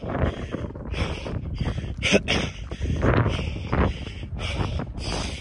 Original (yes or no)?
yes